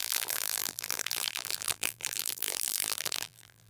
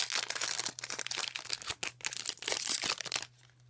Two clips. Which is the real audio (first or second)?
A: second